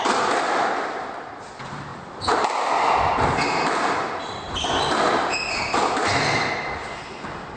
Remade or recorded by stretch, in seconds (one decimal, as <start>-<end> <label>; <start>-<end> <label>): 0.0-7.6 recorded